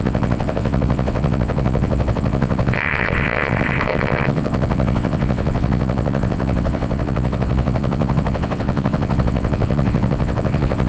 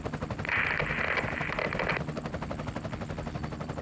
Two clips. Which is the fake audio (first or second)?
first